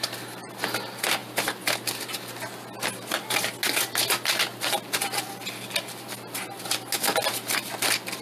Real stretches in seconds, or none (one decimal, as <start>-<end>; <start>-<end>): 0.0-8.2

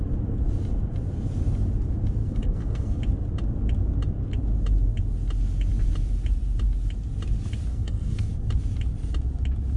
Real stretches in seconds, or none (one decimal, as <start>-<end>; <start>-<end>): 0.0-2.2; 3.0-7.7; 8.3-9.8

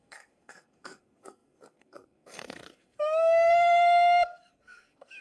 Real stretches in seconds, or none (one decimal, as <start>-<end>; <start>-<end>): none

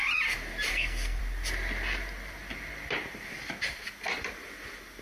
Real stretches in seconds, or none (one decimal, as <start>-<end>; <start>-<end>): 0.0-0.7; 1.2-5.0

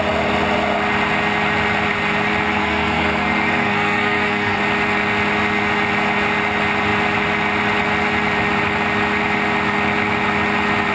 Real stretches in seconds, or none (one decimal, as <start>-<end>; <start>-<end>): 0.0-2.6; 4.6-10.9

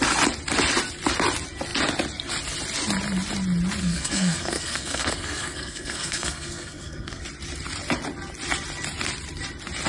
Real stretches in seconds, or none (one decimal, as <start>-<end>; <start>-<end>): 0.0-3.8; 7.2-9.9